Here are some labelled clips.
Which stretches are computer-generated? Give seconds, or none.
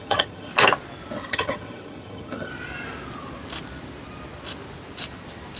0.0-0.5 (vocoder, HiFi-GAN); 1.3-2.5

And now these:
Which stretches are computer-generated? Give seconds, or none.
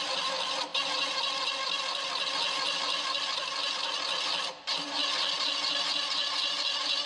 none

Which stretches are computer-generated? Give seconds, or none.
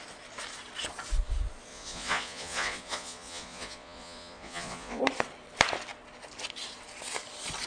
1.7-5.0 (vocoder, Vocos)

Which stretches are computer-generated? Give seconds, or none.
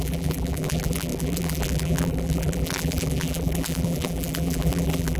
0.0-5.2 (vocoder, BigVGAN v2)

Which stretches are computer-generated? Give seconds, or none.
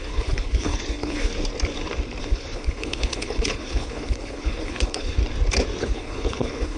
0.0-1.3 (codec, HILCodec); 2.2-5.2; 5.8-6.8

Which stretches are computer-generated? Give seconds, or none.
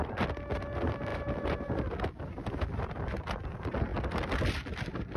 3.9-5.2 (vocoder, BigVGAN v2)